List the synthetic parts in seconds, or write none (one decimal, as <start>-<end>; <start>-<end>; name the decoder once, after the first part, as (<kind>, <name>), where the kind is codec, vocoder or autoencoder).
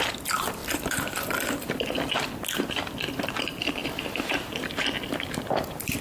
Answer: 0.6-1.9 (vocoder, BigVGAN v2); 3.8-5.2